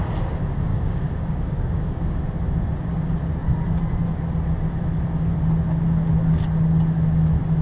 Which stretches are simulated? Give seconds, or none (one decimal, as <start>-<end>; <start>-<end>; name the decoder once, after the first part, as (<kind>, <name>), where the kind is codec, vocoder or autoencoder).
0.7-2.2 (codec, DAC)